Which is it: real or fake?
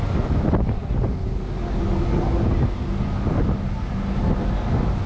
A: real